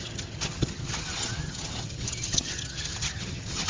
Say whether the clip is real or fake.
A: fake